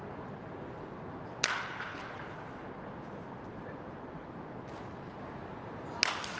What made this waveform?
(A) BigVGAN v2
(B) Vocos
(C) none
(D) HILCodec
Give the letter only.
C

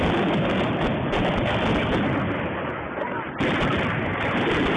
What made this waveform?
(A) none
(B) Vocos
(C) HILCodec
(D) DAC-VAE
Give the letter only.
A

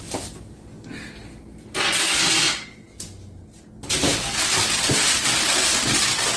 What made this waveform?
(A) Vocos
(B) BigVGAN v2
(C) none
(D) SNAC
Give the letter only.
C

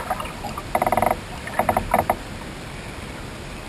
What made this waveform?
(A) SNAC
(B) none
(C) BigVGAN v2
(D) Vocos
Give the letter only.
C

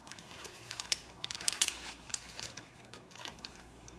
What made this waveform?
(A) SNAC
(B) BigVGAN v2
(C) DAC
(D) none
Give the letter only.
A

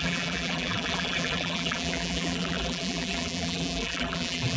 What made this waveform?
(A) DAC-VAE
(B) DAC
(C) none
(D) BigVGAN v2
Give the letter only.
D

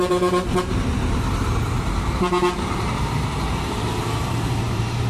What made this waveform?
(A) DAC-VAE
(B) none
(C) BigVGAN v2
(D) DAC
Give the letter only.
C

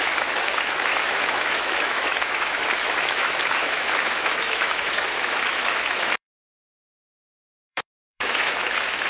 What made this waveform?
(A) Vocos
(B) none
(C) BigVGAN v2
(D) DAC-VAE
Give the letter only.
D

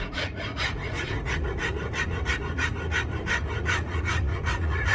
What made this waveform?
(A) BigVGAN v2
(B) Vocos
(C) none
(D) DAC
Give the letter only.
B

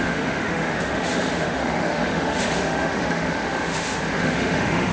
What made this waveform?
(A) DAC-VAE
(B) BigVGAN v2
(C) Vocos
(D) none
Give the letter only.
A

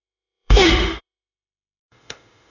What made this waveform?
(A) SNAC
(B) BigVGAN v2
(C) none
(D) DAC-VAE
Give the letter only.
D